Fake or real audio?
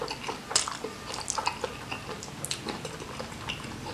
real